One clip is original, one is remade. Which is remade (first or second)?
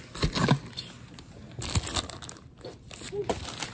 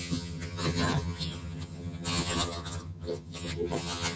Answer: second